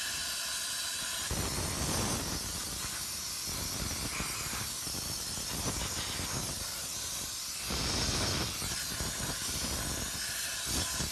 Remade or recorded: recorded